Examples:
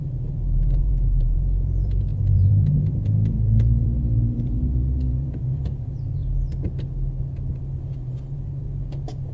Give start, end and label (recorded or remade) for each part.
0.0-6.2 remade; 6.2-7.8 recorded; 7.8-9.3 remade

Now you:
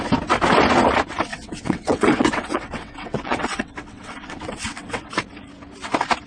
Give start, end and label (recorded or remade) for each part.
0.0-1.3 recorded; 1.3-5.1 remade; 5.1-6.3 recorded

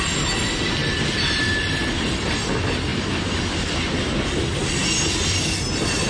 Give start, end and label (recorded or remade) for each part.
0.0-6.1 recorded

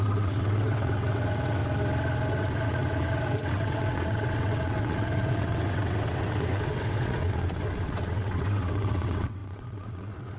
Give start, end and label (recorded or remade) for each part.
0.0-1.6 remade; 1.6-2.3 recorded; 2.3-10.4 remade

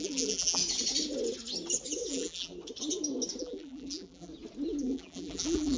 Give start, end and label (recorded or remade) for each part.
0.0-0.6 remade; 0.6-2.1 recorded; 2.1-2.5 remade; 2.5-3.4 recorded; 3.4-4.3 remade; 4.3-4.8 recorded; 4.8-5.8 remade